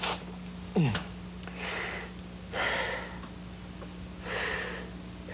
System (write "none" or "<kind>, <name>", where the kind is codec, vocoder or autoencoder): none